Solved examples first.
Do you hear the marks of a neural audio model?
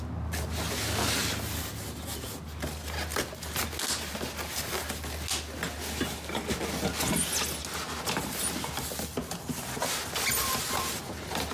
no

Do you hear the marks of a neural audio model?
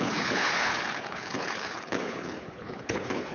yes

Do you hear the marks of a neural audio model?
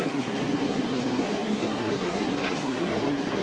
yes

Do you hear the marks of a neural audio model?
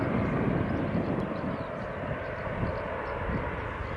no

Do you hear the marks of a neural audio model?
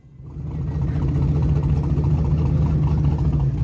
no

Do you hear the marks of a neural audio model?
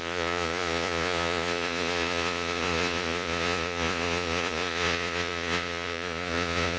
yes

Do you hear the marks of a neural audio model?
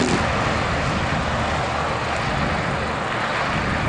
no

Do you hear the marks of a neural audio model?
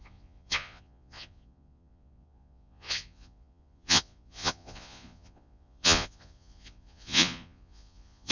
yes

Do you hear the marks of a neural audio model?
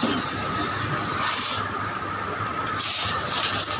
yes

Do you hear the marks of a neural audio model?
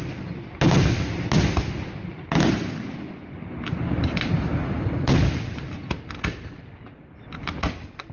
no